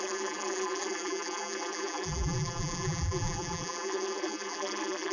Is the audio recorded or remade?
remade